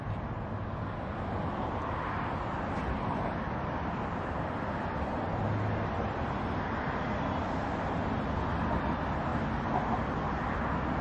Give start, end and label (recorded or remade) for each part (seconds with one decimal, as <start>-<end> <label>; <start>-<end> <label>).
0.0-11.0 recorded